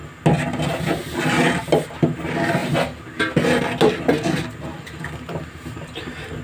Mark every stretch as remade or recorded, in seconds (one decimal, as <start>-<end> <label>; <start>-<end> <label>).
0.0-6.4 recorded